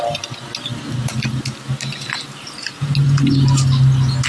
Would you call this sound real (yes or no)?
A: yes